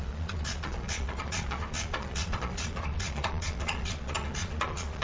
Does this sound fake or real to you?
fake